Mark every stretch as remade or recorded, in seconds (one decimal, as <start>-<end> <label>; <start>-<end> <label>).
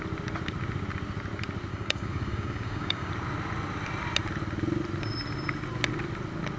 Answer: 0.0-1.7 recorded; 1.7-3.1 remade; 3.1-6.6 recorded